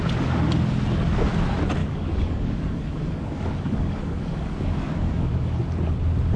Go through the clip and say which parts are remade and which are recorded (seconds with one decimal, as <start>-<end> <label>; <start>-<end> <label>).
0.0-1.8 recorded; 1.8-5.6 remade; 5.6-6.4 recorded